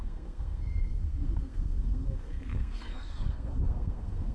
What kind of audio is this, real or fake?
fake